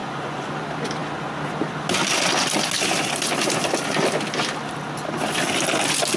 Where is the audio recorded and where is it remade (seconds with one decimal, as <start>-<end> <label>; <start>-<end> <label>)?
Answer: 0.0-0.6 remade; 0.6-6.2 recorded